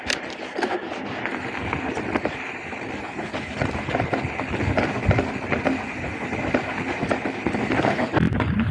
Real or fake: real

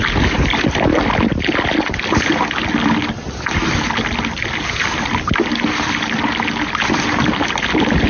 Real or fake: real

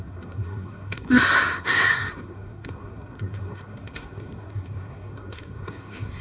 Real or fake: fake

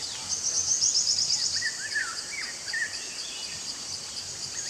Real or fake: real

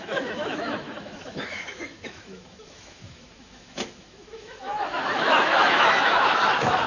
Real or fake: fake